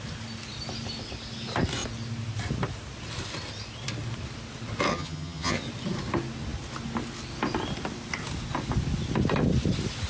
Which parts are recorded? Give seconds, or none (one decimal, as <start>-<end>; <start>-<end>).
0.0-4.9; 5.6-10.1